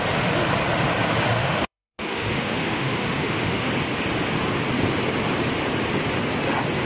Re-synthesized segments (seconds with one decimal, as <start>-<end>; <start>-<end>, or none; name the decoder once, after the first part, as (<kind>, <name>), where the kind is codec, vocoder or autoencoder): 1.4-3.7 (autoencoder, DAC-VAE)